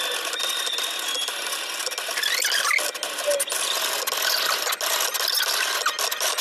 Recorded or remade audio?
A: recorded